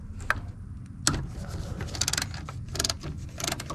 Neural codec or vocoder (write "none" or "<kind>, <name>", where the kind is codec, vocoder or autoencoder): none